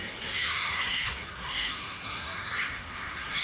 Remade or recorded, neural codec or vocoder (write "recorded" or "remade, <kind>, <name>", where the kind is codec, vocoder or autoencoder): remade, codec, SNAC